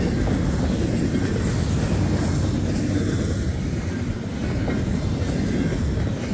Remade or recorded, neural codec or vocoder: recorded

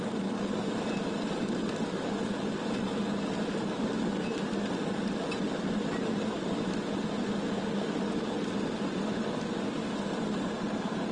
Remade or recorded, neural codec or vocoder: recorded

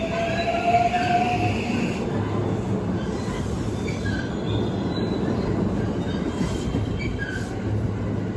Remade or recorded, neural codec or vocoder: recorded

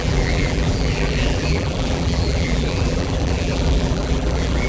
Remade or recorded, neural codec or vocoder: remade, vocoder, BigVGAN v2